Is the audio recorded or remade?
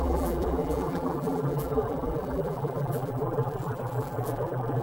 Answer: remade